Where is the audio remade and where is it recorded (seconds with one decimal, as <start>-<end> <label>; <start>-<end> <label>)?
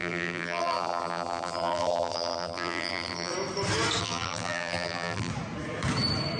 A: 0.0-3.3 remade; 3.3-4.0 recorded; 4.0-5.3 remade; 5.3-6.4 recorded